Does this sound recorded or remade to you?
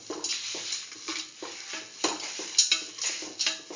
recorded